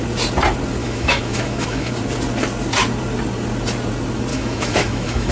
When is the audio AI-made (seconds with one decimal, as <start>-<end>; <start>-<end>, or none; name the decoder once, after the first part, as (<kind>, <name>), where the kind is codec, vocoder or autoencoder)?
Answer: 0.8-1.9 (autoencoder, DAC-VAE); 4.3-5.3